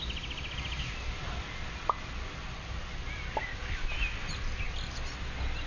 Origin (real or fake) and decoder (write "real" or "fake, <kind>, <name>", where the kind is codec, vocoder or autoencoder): real